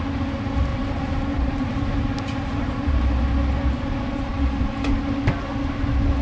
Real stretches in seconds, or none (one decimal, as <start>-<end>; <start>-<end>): 0.0-0.7; 3.2-6.2